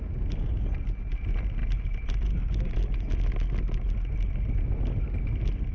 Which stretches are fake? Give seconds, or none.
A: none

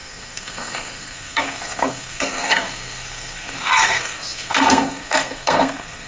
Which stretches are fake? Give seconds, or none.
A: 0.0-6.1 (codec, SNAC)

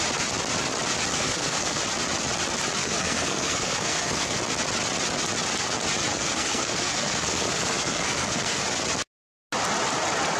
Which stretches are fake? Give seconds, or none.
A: 1.1-1.8 (codec, SNAC); 2.8-4.4; 6.1-8.6